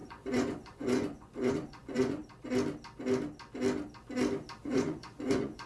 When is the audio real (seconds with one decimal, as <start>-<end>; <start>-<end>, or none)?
2.2-4.6